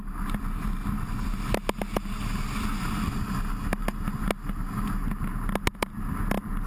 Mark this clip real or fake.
real